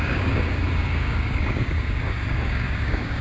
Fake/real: fake